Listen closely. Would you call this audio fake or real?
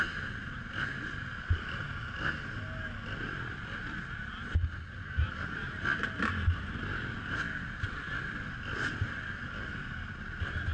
real